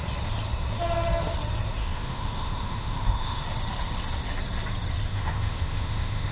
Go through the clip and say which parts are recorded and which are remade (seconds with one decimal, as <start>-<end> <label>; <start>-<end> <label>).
0.0-1.8 recorded; 1.8-3.4 remade; 3.4-5.1 recorded; 5.1-6.3 remade